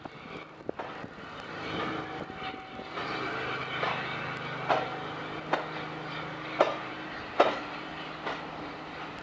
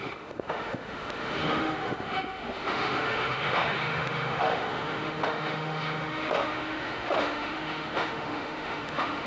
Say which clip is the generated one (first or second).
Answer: second